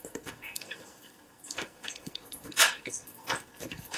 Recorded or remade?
remade